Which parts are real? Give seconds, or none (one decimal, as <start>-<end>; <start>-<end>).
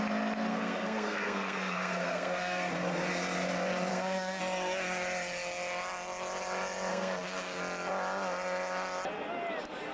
0.0-0.5; 2.7-3.9; 4.4-6.9; 7.6-9.9